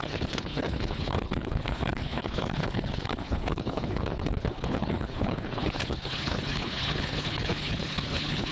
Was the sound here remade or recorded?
remade